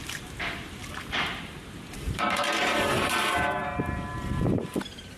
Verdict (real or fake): fake